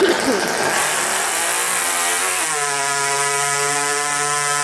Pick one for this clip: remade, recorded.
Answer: recorded